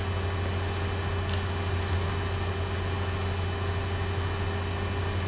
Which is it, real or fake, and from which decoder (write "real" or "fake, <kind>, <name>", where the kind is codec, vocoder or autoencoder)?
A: real